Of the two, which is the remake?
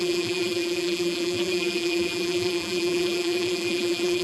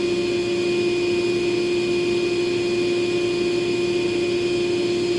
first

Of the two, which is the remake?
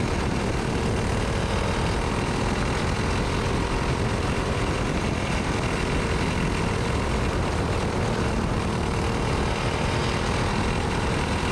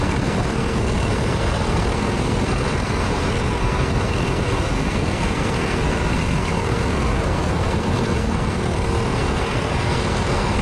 second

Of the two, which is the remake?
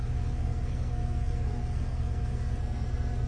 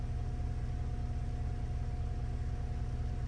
first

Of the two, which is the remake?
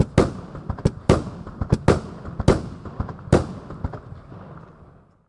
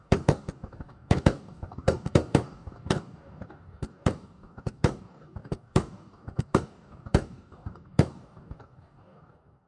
second